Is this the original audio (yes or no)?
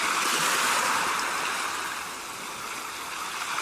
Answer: yes